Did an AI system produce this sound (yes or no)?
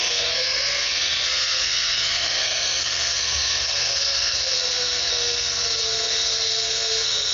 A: yes